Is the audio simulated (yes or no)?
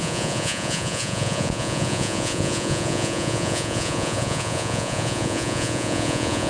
yes